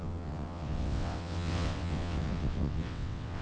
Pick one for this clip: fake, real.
fake